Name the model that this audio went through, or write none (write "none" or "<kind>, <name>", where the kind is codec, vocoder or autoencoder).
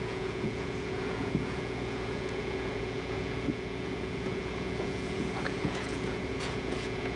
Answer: vocoder, Vocos